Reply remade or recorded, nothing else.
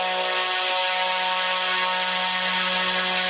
recorded